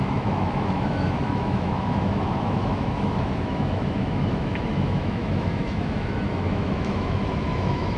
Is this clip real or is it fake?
fake